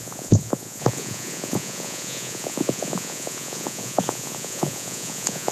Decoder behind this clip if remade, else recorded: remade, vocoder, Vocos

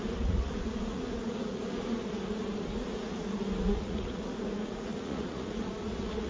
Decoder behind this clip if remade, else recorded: remade, vocoder, Vocos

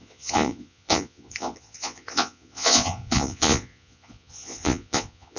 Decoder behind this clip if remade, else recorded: remade, vocoder, Vocos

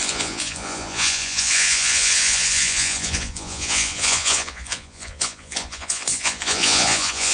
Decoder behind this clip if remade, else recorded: remade, vocoder, Vocos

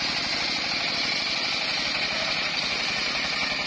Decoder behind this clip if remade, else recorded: recorded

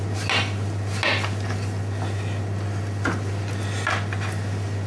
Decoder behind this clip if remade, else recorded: recorded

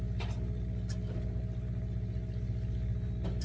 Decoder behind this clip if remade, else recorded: recorded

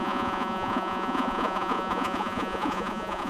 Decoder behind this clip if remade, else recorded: remade, vocoder, Vocos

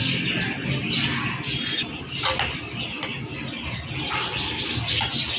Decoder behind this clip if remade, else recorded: recorded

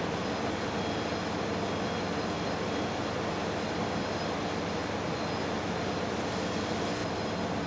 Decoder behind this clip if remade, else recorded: recorded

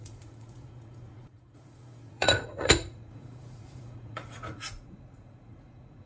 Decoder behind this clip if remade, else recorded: remade, vocoder, Vocos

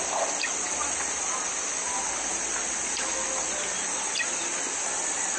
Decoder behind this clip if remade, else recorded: recorded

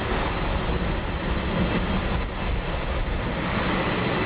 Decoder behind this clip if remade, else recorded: recorded